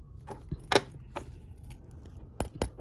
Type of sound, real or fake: real